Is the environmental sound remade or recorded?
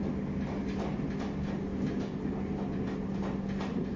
recorded